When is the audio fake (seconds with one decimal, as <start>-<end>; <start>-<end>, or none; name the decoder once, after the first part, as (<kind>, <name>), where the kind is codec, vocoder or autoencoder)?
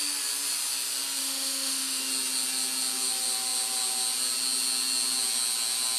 1.2-2.0 (autoencoder, DAC-VAE)